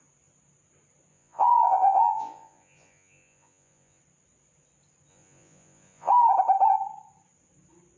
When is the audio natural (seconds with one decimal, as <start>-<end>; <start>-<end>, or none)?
0.0-1.1; 4.0-5.1; 6.1-8.0